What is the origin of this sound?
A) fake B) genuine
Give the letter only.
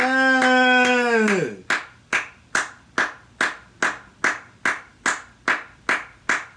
B